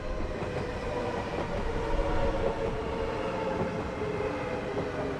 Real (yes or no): yes